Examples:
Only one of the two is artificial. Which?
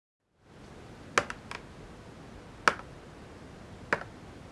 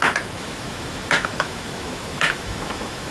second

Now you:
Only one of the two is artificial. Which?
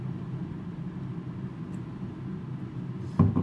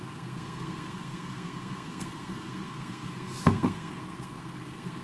second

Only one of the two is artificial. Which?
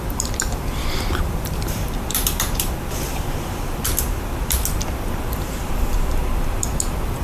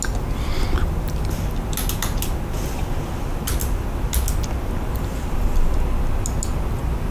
first